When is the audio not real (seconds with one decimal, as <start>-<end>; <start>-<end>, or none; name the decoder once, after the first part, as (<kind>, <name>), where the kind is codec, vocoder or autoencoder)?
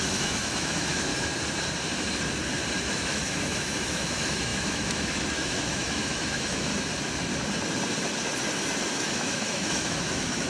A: 0.0-1.1 (autoencoder, DAC-VAE); 2.9-6.7; 8.9-10.5